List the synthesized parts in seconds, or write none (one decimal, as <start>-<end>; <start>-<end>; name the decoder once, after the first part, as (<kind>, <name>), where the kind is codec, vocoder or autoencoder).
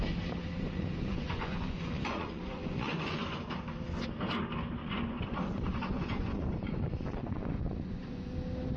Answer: 0.4-3.2 (vocoder, Vocos); 4.8-8.3